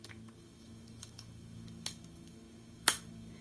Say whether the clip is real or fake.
fake